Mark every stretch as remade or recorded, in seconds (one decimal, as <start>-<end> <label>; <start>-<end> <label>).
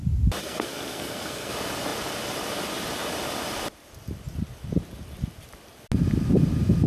0.0-0.4 recorded; 0.4-1.5 remade; 1.5-6.9 recorded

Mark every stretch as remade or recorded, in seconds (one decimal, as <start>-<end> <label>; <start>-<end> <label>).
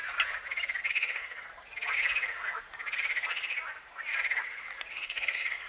0.0-0.9 recorded; 0.9-1.5 remade; 1.5-4.9 recorded; 4.9-5.7 remade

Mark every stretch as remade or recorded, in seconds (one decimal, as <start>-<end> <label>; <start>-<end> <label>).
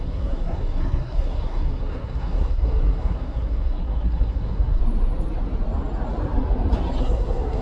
0.0-4.8 remade; 4.8-7.0 recorded; 7.0-7.6 remade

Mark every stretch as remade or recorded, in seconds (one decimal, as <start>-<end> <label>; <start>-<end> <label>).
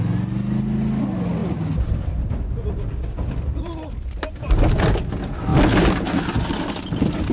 0.0-7.3 recorded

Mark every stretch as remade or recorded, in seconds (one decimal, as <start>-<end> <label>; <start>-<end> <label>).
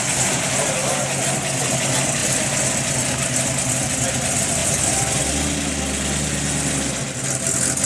0.0-7.8 recorded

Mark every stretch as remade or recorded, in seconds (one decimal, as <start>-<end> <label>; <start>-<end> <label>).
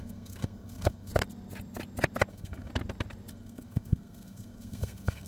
0.0-1.1 remade; 1.1-2.3 recorded; 2.3-2.7 remade; 2.7-3.3 recorded; 3.3-5.3 remade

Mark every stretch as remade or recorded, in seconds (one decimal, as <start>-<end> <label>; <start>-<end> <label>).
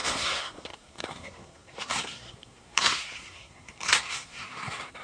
0.0-5.0 remade